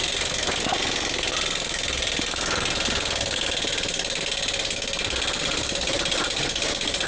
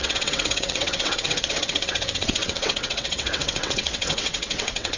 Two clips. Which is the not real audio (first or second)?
second